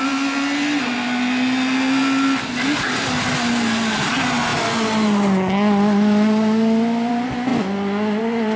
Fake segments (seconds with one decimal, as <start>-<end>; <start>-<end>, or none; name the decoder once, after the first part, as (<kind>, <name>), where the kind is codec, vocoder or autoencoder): none